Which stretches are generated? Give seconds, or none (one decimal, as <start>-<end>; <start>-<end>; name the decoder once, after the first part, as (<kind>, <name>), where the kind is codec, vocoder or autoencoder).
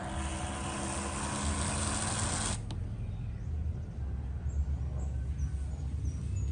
none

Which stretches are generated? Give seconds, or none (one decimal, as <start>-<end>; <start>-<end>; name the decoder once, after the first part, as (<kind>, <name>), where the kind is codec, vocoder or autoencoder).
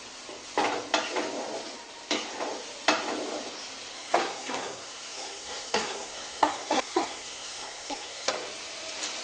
3.9-8.3 (codec, SNAC)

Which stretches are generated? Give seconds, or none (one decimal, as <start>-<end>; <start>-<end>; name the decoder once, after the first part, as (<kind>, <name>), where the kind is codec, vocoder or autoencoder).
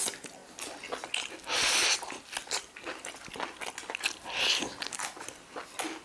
none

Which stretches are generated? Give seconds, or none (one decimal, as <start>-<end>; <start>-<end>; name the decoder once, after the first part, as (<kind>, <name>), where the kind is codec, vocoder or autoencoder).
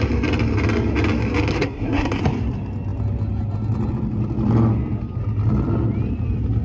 1.5-2.2 (codec, SNAC)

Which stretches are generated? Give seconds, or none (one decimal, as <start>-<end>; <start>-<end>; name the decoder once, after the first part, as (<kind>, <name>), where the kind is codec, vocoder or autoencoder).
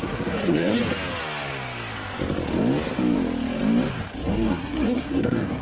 0.0-0.8 (codec, SNAC); 4.2-5.6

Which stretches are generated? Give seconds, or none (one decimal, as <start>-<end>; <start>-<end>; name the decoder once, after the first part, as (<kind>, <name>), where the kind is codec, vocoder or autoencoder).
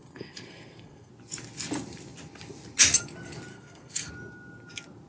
0.0-1.1 (codec, SNAC); 3.5-4.1